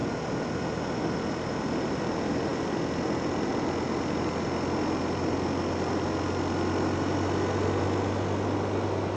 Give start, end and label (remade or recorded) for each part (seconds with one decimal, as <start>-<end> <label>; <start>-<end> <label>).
0.0-9.2 recorded